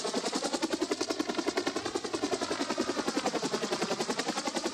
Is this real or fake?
fake